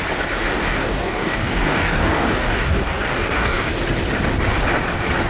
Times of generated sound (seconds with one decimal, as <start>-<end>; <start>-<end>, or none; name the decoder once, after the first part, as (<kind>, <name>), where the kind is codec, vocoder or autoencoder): 0.5-3.7 (codec, DAC)